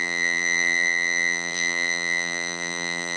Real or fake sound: fake